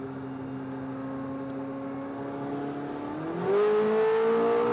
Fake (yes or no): no